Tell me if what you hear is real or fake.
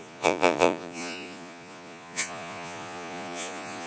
fake